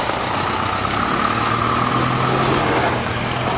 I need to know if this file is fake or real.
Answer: real